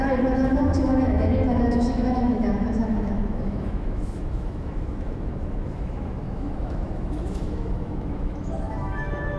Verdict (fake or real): fake